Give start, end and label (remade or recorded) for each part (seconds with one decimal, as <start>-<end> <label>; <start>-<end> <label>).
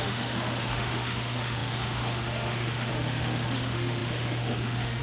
0.0-5.0 remade